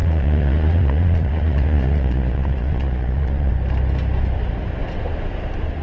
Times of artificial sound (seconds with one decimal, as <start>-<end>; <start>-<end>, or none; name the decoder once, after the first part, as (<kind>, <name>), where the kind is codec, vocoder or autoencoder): 0.0-3.5 (vocoder, Vocos)

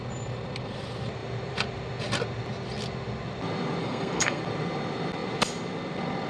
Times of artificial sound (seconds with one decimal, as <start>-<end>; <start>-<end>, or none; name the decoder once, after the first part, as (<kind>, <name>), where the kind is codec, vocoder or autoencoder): 3.8-4.4 (codec, SNAC)

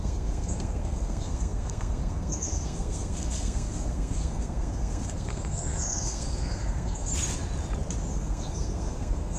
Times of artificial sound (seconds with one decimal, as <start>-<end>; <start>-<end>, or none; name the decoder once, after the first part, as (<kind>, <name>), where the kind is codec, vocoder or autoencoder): 0.0-7.1 (codec, SNAC); 8.1-9.4

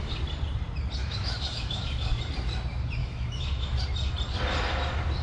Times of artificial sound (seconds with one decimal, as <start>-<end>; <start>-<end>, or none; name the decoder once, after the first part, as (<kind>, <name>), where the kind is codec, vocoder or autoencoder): 1.0-2.2 (autoencoder, DAC-VAE); 3.0-3.8

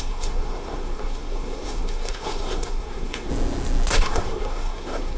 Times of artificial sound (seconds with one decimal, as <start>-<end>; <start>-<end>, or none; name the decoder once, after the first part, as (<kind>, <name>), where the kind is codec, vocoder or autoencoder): 0.0-3.3 (codec, SNAC); 3.9-5.2